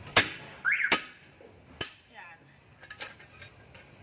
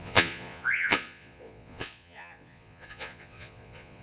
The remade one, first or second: second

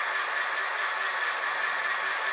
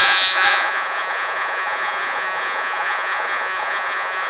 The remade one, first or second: second